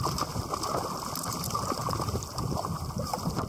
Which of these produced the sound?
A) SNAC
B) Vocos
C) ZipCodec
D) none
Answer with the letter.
D